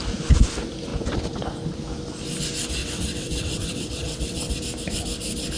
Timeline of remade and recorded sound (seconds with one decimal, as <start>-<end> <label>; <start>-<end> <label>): 0.0-2.8 recorded; 2.8-4.5 remade; 4.5-5.6 recorded